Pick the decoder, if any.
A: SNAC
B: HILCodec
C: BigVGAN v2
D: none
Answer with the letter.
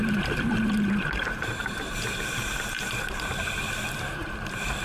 C